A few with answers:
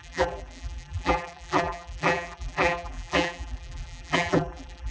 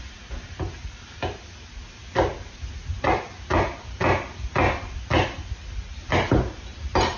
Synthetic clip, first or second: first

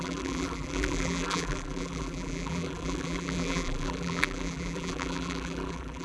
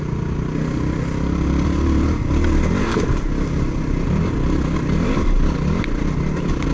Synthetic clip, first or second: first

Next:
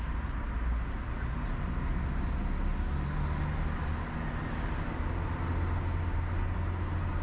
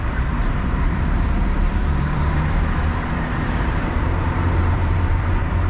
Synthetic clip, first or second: second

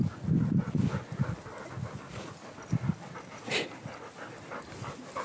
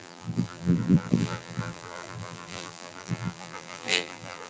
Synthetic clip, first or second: second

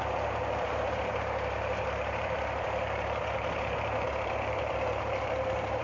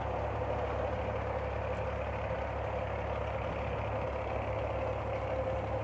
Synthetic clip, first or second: first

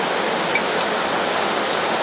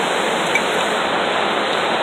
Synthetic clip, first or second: second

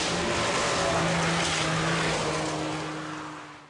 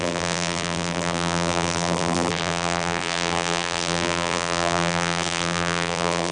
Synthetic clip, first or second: second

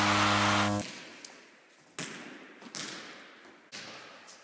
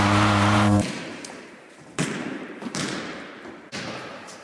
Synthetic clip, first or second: second